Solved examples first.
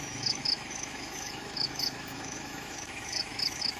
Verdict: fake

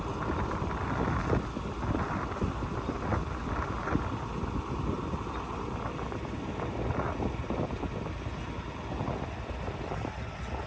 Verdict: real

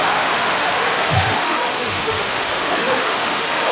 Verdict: fake